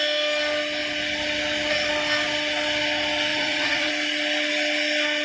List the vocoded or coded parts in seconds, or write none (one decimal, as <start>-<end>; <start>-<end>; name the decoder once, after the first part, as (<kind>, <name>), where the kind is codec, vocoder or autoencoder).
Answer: 3.3-3.9 (vocoder, Vocos)